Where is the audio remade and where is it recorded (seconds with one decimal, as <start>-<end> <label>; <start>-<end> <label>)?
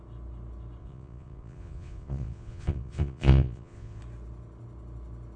0.0-0.8 recorded; 0.8-4.0 remade; 4.0-5.4 recorded